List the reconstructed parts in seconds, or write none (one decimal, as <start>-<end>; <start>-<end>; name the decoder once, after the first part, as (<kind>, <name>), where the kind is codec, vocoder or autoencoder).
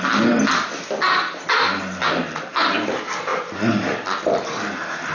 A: 1.2-2.2 (vocoder, BigVGAN v2); 3.3-5.1